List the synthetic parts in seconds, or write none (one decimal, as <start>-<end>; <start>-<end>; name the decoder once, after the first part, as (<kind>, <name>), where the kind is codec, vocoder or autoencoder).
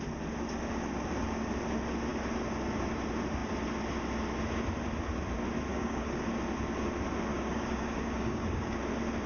5.7-6.2 (codec, DAC); 7.3-8.8